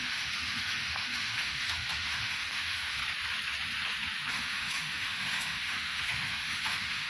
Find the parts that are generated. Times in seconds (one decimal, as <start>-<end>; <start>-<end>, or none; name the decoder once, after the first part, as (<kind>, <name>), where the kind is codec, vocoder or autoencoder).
0.0-3.0 (autoencoder, DAC-VAE); 4.3-7.1